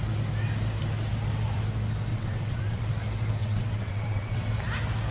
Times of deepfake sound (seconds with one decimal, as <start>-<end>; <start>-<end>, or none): 2.1-2.8; 3.4-4.5